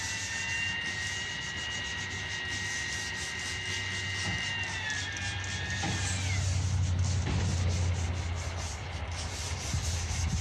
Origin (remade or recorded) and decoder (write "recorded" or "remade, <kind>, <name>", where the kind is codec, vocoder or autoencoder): recorded